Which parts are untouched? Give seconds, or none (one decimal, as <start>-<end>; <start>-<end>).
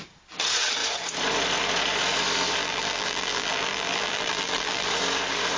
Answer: 0.0-2.6; 4.9-5.6